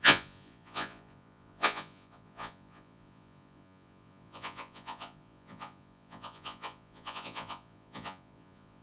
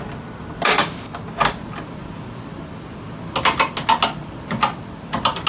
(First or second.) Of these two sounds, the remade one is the first